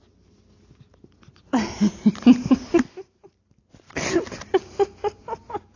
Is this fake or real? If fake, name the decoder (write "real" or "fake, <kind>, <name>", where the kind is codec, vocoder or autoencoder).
real